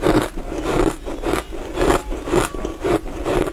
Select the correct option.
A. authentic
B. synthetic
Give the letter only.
A